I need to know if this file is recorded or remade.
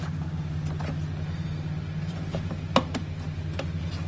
recorded